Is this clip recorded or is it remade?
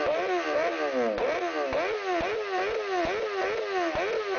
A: recorded